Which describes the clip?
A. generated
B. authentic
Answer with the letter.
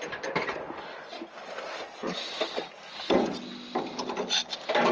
B